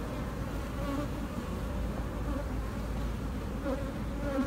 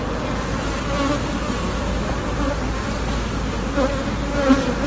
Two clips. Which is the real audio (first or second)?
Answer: second